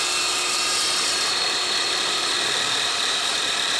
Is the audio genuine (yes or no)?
no